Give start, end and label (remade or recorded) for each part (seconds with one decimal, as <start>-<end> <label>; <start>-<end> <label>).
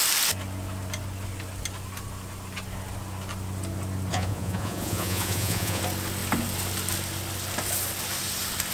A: 0.0-4.1 recorded; 4.1-5.8 remade; 5.8-8.7 recorded